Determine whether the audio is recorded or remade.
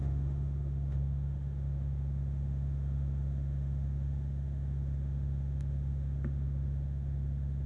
remade